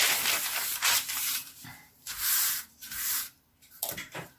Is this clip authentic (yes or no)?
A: no